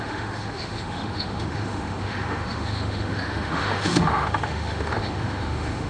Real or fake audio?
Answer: fake